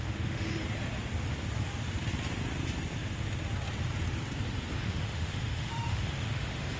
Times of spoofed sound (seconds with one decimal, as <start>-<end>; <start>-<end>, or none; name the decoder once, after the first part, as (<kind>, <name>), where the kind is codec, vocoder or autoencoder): 0.0-0.6 (autoencoder, DAC-VAE); 4.7-6.8